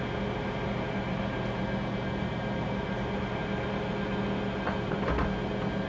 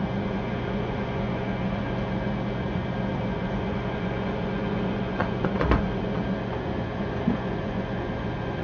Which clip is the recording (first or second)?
first